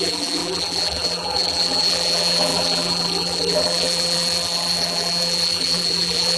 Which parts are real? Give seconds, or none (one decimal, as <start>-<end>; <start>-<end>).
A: none